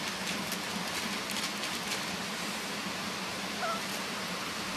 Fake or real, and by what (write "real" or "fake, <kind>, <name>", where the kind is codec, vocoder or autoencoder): real